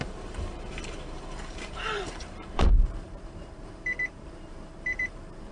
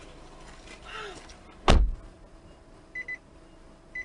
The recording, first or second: second